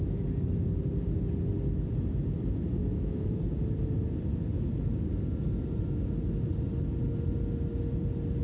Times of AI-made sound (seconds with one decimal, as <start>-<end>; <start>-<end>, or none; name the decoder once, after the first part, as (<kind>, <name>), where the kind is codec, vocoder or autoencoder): 2.8-3.4 (autoencoder, DAC-VAE)